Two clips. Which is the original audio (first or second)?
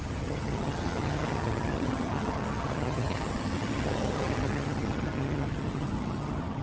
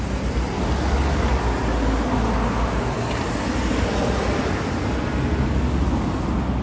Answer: second